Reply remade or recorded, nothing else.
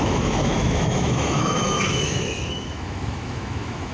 remade